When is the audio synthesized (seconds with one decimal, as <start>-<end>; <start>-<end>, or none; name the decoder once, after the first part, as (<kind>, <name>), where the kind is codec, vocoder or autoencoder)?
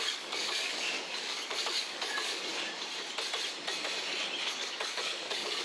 0.0-2.5 (codec, DAC); 4.5-5.6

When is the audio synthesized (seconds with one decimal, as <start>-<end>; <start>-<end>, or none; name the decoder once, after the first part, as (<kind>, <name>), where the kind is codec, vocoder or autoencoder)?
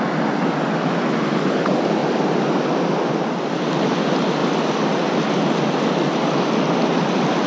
2.0-3.1 (vocoder, BigVGAN v2)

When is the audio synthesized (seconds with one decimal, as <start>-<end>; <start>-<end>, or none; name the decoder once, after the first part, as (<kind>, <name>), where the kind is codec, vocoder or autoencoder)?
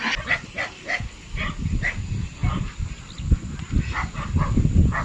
none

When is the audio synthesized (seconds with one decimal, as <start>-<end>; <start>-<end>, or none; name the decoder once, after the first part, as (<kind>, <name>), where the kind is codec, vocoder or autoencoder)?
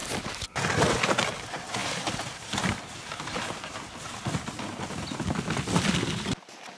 none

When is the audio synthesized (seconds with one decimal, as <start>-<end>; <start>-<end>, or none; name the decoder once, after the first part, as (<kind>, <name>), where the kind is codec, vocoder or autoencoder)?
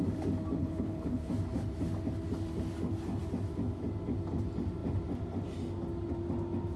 0.6-1.3 (codec, HILCodec)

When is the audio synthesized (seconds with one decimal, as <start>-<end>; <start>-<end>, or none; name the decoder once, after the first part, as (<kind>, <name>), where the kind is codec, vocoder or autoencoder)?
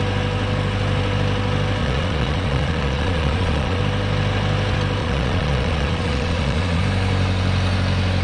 1.8-3.8 (vocoder, Vocos); 5.0-6.8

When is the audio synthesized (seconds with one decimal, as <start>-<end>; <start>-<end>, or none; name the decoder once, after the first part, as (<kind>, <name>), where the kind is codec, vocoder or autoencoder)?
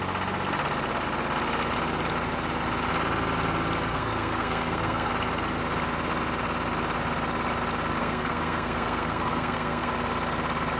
3.9-5.1 (codec, SNAC); 8.0-9.9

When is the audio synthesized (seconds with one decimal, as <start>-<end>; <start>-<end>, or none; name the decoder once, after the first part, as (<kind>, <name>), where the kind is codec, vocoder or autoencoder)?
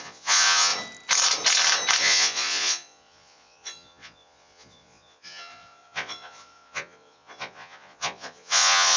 0.0-0.7 (vocoder, Vocos); 2.0-9.0